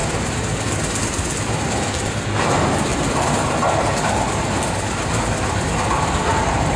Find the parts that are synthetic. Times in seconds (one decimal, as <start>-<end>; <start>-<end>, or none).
none